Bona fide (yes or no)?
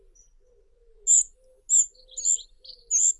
yes